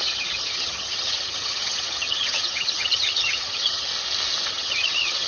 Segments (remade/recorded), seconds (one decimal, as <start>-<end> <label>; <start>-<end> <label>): 0.0-3.9 remade; 3.9-4.5 recorded; 4.5-5.3 remade